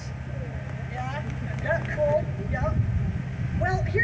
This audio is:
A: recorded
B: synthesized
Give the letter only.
A